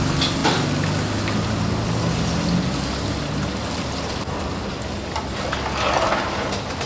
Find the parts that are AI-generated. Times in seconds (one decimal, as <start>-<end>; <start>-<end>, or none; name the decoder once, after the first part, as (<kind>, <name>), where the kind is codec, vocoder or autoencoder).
none